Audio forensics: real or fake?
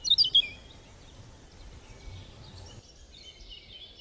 real